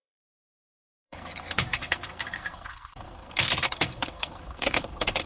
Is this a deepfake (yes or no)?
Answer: yes